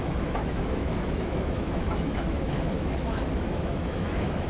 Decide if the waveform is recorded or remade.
remade